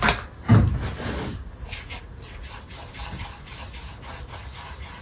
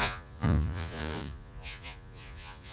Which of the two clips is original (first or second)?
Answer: first